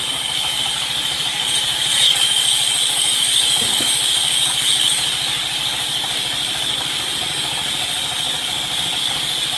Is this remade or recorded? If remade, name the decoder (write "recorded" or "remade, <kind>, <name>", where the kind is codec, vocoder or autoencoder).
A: remade, codec, DAC